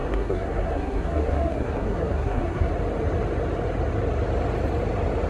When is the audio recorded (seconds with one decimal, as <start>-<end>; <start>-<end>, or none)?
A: 2.7-5.3